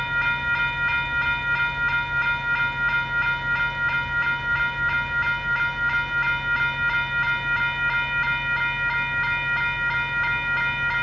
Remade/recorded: recorded